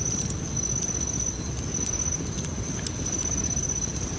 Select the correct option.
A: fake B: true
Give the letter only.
B